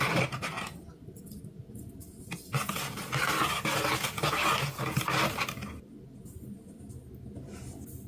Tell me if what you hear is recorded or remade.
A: recorded